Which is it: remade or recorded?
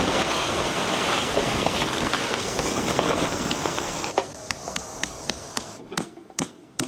remade